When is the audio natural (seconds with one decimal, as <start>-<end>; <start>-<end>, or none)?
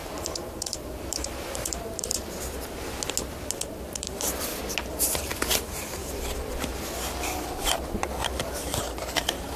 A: 2.1-3.8; 4.5-5.0; 6.0-7.6